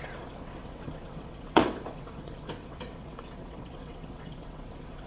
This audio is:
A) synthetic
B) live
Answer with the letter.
A